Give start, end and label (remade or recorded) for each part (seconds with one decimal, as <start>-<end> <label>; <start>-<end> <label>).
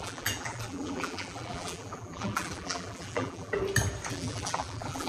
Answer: 0.0-3.6 remade; 3.6-4.1 recorded; 4.1-5.1 remade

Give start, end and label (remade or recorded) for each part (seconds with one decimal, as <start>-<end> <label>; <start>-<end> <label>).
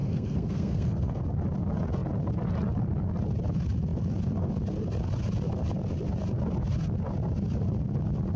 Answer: 0.0-1.2 remade; 1.2-8.4 recorded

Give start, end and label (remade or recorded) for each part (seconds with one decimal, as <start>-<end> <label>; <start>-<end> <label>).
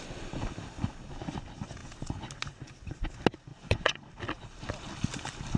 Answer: 0.0-3.5 recorded; 3.5-4.1 remade; 4.1-5.6 recorded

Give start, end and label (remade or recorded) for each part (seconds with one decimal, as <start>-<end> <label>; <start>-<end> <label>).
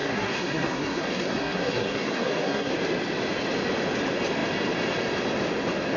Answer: 0.0-2.7 remade; 2.7-6.0 recorded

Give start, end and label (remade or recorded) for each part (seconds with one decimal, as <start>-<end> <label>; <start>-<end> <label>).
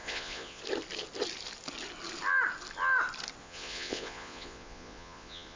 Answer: 0.0-0.6 remade; 0.6-3.4 recorded; 3.4-5.6 remade